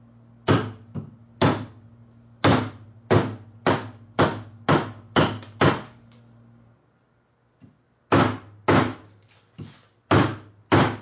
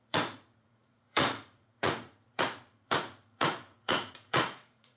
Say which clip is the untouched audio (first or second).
first